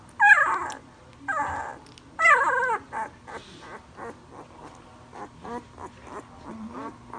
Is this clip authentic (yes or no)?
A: yes